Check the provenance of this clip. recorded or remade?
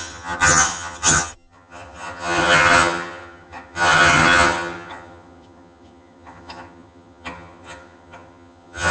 remade